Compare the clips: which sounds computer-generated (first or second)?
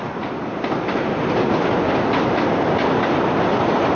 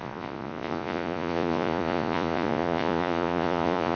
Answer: second